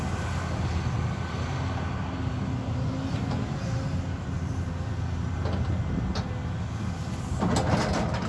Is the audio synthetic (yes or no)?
no